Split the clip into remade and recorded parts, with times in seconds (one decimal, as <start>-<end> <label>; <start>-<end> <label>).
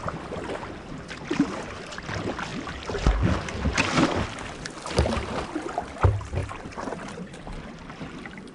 0.0-8.5 recorded